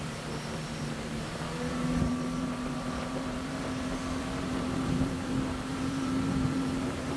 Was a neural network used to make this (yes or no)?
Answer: yes